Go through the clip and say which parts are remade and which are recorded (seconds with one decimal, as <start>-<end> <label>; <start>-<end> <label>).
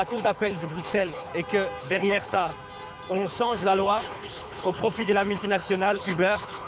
0.0-1.3 remade; 1.3-1.8 recorded; 1.8-2.5 remade; 2.5-3.1 recorded; 3.1-6.7 remade